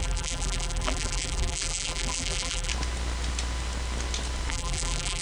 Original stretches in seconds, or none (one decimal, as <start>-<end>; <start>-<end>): 2.7-4.5